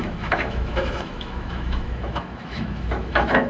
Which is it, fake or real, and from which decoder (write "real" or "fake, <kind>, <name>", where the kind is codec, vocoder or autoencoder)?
fake, autoencoder, DAC-VAE